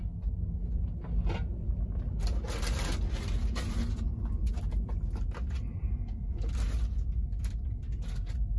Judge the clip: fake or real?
real